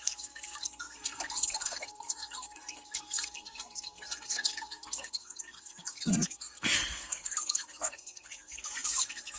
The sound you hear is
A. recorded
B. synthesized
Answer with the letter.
B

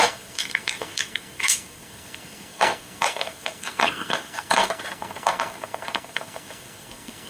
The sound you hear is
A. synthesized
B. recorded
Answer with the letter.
A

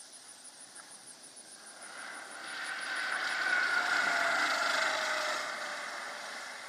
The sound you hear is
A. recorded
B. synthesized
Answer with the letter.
B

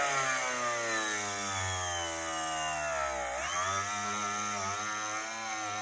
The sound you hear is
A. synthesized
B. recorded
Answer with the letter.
B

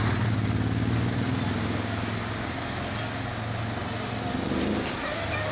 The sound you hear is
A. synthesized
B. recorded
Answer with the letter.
B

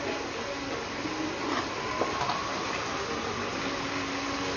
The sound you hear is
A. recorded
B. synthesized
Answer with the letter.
A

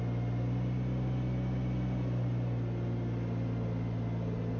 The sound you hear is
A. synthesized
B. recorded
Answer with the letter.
B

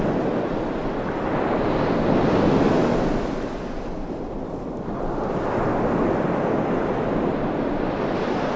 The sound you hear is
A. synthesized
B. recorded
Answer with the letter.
B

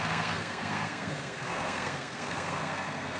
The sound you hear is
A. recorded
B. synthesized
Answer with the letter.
B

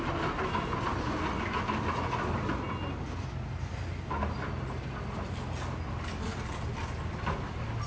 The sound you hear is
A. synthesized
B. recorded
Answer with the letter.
B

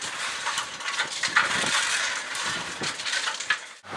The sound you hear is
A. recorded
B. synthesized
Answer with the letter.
A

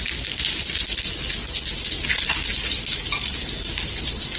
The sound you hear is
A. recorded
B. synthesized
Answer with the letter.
A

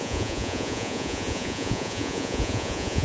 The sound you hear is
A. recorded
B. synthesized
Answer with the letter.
B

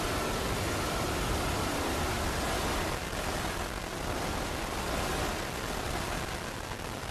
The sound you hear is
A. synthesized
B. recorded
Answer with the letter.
B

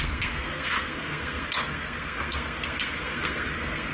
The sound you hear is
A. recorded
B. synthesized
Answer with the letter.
B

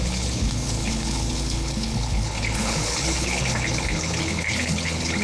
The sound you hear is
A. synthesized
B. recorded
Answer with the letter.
A